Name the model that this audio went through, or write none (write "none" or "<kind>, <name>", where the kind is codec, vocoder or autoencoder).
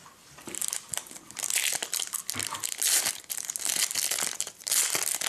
none